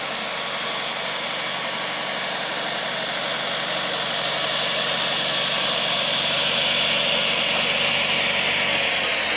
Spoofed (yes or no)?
no